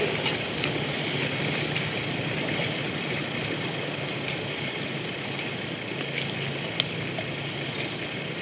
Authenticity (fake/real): real